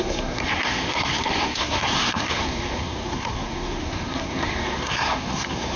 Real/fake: fake